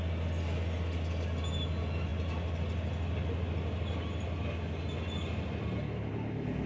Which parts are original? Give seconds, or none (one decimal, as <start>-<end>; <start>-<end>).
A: 0.0-6.7